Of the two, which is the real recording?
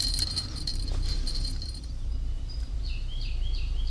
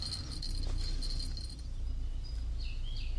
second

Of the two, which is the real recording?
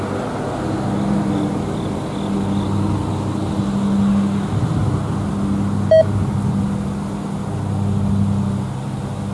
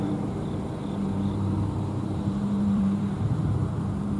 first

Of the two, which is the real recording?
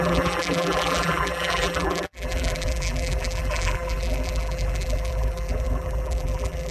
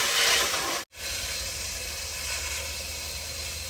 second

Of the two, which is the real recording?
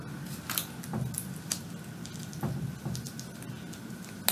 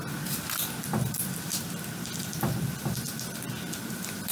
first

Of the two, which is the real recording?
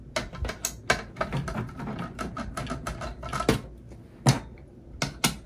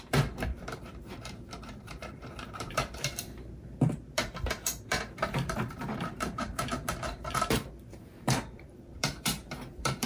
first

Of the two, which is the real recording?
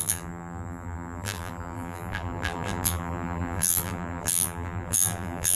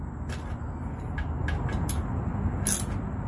second